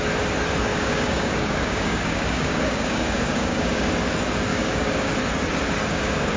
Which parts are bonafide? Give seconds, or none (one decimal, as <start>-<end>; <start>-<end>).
0.0-0.7; 3.9-4.5; 5.1-5.9